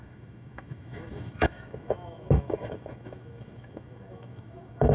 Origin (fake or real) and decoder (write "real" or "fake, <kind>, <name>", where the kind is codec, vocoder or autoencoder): fake, autoencoder, DAC-VAE